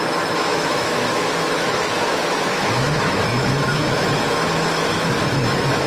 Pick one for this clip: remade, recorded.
remade